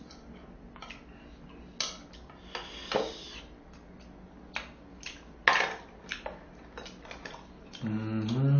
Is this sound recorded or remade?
recorded